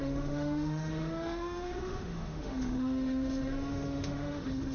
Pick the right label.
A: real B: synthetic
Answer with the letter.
B